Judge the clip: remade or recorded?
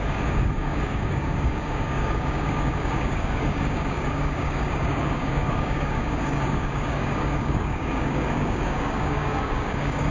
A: remade